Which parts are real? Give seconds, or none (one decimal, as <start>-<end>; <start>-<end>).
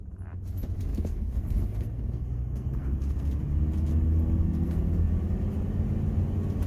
0.0-0.9; 3.4-3.9; 5.1-6.7